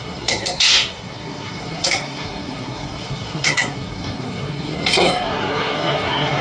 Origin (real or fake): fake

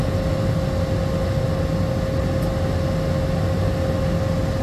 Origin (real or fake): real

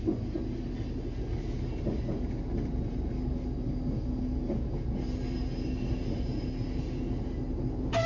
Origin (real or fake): real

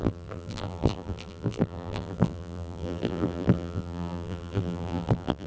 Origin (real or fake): fake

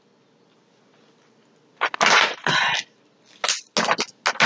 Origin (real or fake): real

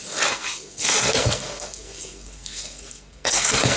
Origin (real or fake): fake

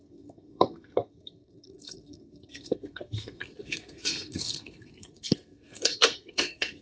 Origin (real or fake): fake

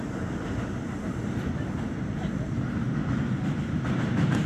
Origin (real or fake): real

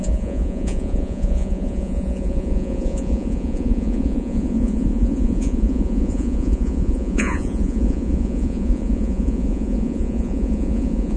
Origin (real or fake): fake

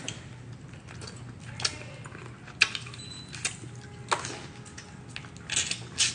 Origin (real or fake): real